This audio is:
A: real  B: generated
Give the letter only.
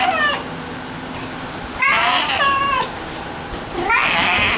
A